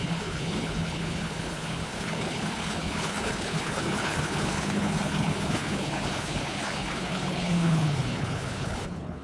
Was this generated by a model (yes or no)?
yes